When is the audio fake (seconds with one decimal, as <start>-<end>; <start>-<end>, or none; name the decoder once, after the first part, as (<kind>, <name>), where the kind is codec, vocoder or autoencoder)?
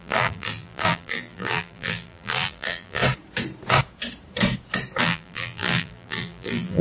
0.0-3.0 (vocoder, BigVGAN v2); 5.0-6.8